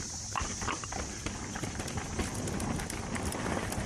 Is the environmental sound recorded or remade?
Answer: remade